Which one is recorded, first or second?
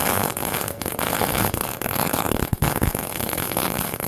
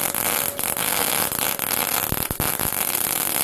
second